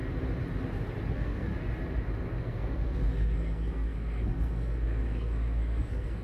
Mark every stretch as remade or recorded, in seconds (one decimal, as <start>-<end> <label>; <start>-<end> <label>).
0.0-1.1 recorded; 1.1-1.5 remade; 1.5-2.4 recorded; 2.4-6.2 remade